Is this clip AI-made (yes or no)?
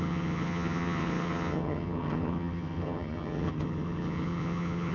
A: yes